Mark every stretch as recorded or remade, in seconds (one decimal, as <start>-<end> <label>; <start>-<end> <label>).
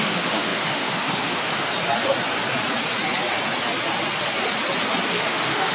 0.0-1.7 remade; 1.7-5.1 recorded; 5.1-5.7 remade